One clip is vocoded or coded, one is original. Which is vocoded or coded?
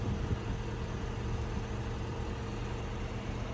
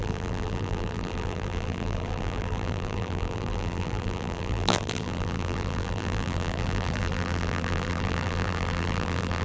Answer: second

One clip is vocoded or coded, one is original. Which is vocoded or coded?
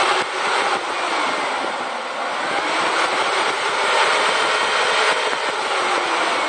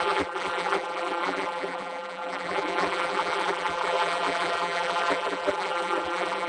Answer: second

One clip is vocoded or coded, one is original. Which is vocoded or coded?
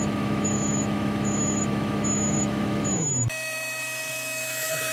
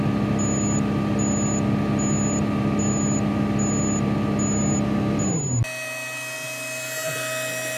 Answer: first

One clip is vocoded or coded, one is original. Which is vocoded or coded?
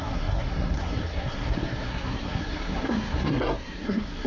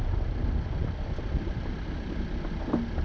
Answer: first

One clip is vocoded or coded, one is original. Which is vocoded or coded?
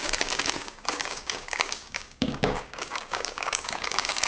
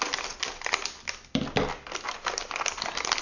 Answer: first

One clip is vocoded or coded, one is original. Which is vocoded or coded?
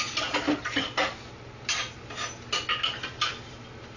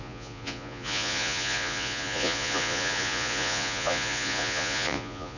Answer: second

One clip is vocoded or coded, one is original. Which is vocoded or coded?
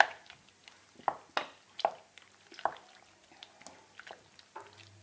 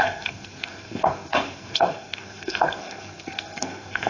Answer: second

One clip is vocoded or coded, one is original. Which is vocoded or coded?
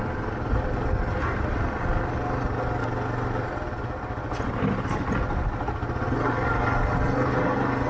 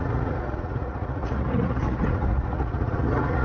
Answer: second